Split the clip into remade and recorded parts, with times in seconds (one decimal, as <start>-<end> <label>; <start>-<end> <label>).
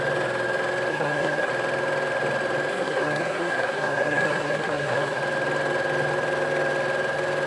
0.0-0.9 recorded; 0.9-1.5 remade; 1.5-2.7 recorded; 2.7-5.2 remade; 5.2-7.5 recorded